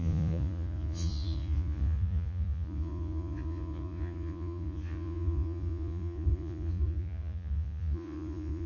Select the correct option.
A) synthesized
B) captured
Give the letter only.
A